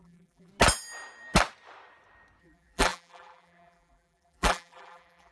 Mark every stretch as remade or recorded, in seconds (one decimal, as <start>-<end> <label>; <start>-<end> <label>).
0.0-0.5 remade; 0.5-2.4 recorded; 2.4-5.3 remade